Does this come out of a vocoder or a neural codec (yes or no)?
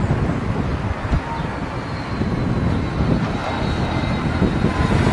no